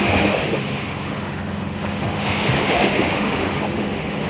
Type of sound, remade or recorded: remade